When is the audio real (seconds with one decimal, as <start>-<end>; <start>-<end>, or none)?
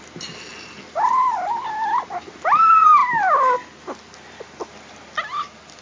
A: 0.0-5.8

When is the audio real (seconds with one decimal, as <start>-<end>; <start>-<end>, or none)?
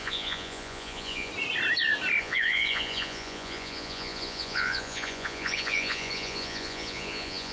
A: 1.3-2.2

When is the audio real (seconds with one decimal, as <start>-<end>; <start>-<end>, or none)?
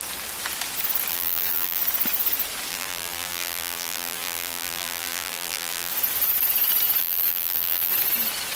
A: 0.0-1.1; 1.8-2.7; 5.9-7.0; 7.9-8.6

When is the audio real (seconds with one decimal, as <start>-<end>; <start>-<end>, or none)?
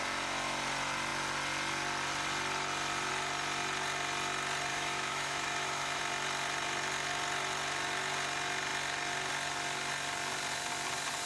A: 0.0-4.7; 6.0-11.3